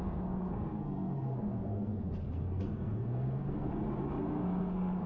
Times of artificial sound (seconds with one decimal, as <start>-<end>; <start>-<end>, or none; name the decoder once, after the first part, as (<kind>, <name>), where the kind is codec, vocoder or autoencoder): 0.0-3.7 (codec, SNAC); 4.3-5.1